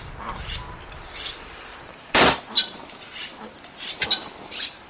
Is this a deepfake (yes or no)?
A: yes